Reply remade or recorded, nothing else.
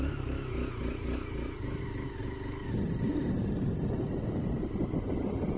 recorded